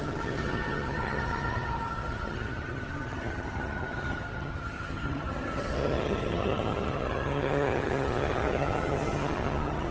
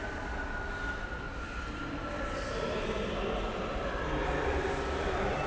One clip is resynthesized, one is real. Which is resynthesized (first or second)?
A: first